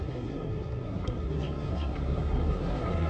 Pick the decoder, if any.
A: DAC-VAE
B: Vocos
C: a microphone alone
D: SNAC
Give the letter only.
D